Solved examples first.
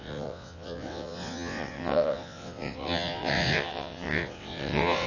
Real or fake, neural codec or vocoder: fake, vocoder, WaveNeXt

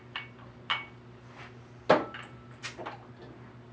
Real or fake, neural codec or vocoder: real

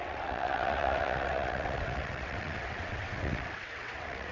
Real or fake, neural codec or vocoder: fake, vocoder, WaveNeXt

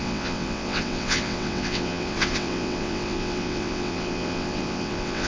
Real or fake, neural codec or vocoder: fake, vocoder, WaveNeXt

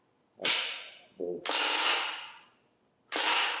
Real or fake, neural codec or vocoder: real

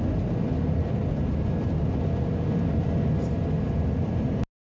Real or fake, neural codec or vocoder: real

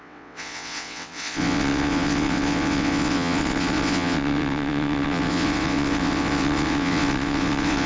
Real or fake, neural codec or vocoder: fake, vocoder, WaveNeXt